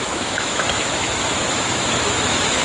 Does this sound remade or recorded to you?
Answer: remade